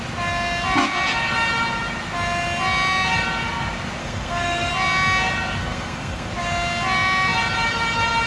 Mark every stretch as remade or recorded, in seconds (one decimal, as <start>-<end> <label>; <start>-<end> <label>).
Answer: 0.0-4.0 recorded; 4.0-4.7 remade; 4.7-5.6 recorded; 5.6-6.3 remade; 6.3-8.3 recorded